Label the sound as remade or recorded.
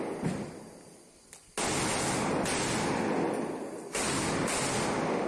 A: recorded